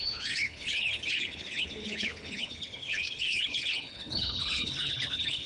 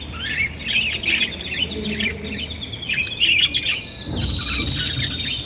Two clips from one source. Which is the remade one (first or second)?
first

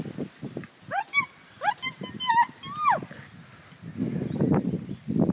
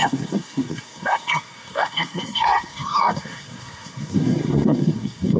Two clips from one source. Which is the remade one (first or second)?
second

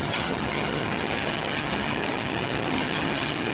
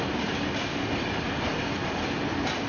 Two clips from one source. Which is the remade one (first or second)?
first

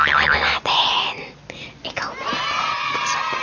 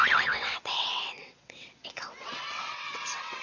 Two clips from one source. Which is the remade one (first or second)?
second